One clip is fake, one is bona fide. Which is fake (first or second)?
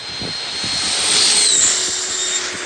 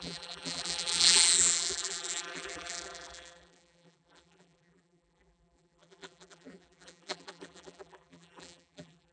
second